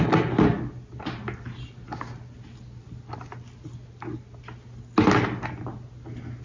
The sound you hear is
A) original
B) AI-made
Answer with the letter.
A